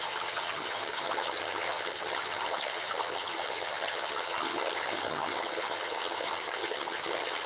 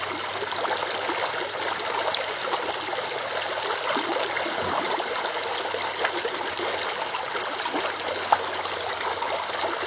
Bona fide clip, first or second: second